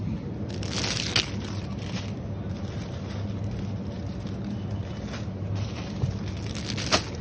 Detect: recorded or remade recorded